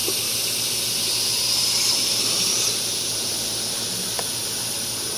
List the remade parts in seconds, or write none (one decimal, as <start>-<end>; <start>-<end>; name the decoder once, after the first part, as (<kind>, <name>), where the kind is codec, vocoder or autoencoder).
0.0-0.7 (vocoder, BigVGAN v2); 1.4-2.9